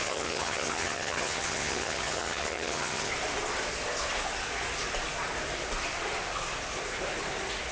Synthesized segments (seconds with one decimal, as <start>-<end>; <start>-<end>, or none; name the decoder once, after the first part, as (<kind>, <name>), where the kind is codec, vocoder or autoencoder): 0.0-3.1 (vocoder, HiFi-GAN)